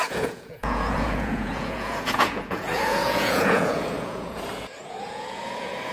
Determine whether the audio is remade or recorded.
remade